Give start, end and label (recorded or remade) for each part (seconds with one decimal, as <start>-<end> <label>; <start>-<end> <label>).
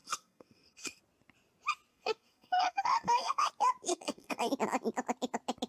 0.0-1.0 remade; 1.0-1.9 recorded; 1.9-3.4 remade; 3.4-3.9 recorded; 3.9-4.5 remade; 4.5-5.7 recorded